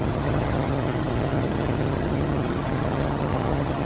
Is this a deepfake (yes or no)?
yes